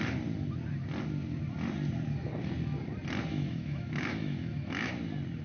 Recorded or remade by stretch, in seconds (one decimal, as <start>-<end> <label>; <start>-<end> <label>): 0.0-3.3 recorded; 3.3-4.9 remade; 4.9-5.4 recorded